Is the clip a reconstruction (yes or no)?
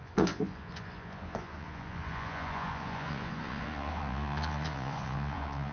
yes